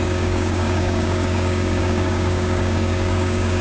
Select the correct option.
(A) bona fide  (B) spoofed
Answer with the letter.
B